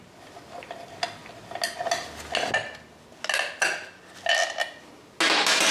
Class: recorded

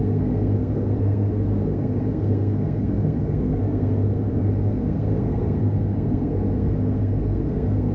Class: remade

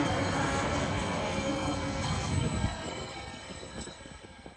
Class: remade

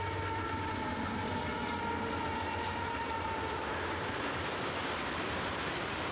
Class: recorded